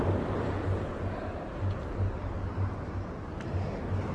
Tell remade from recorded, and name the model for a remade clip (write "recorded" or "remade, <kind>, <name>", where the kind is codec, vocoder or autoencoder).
recorded